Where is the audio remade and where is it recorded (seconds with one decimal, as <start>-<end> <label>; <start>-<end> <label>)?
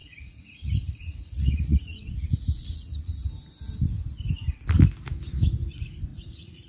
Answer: 0.0-3.3 remade; 3.3-6.1 recorded; 6.1-6.7 remade